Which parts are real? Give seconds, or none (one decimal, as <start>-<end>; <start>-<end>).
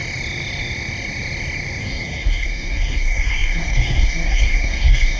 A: 0.0-1.8